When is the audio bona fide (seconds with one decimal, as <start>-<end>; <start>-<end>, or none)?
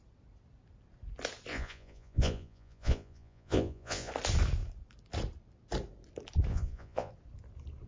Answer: 0.0-1.5; 4.1-6.5; 7.1-7.9